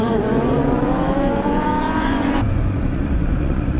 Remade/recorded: remade